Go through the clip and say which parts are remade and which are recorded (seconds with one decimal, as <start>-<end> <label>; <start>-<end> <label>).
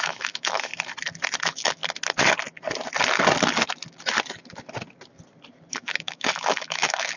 0.0-0.7 remade; 0.7-1.4 recorded; 1.4-1.8 remade; 1.8-5.7 recorded; 5.7-7.2 remade